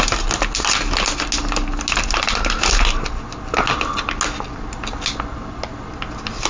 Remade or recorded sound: recorded